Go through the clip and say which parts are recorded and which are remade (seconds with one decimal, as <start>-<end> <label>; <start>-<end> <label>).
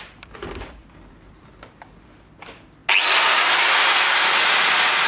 0.0-5.1 recorded